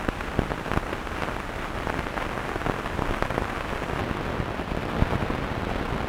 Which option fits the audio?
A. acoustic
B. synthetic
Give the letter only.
A